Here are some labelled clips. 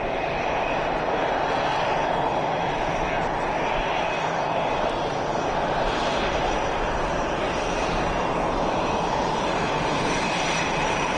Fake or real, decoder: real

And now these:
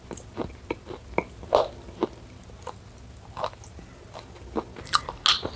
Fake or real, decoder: real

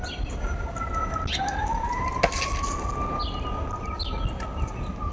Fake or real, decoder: real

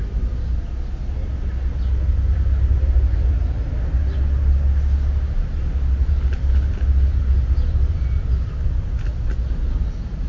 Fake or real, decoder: real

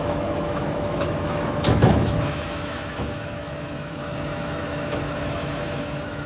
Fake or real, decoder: fake, autoencoder, DAC-VAE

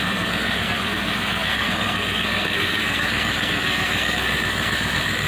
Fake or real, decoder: fake, codec, SNAC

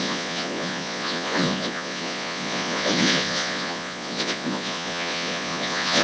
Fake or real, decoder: fake, vocoder, Vocos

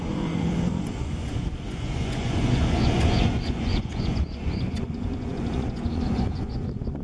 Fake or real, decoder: fake, vocoder, Vocos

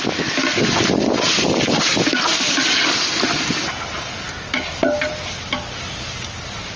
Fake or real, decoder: real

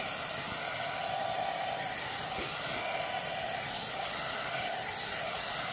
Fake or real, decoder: real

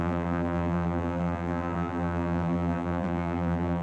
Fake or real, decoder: fake, vocoder, BigVGAN v2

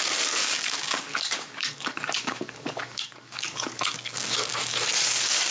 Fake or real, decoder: fake, codec, DAC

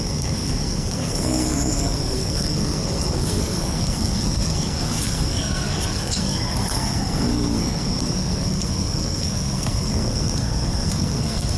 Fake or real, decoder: fake, codec, SNAC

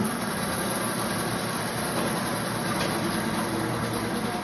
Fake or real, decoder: fake, vocoder, BigVGAN v2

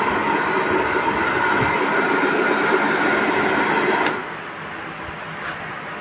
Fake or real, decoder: real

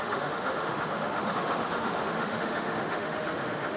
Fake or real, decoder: fake, autoencoder, DAC-VAE